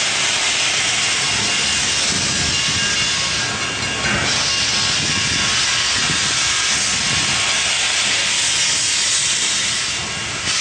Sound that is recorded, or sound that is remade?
recorded